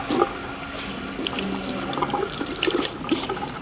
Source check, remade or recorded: recorded